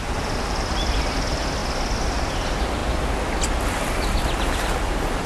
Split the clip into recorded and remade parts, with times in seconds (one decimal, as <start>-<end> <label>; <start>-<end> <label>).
0.0-5.3 recorded